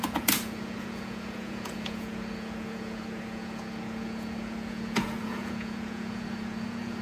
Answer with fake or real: fake